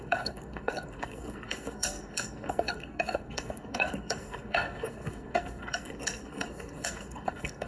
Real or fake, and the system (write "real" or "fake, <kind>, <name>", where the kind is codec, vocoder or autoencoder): fake, codec, SNAC